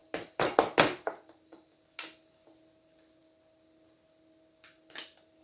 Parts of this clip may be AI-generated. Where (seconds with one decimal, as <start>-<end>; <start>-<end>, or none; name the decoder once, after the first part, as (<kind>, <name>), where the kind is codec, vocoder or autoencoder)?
none